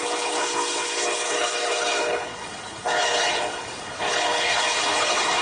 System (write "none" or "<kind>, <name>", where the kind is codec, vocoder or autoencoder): codec, HILCodec